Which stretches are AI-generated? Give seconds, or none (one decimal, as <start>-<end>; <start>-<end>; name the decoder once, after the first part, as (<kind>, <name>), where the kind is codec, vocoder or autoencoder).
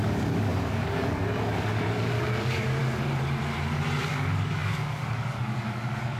0.0-2.8 (codec, DAC); 4.0-6.2